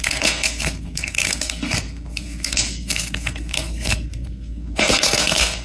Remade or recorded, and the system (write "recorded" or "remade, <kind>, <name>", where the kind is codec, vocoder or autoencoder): remade, codec, SNAC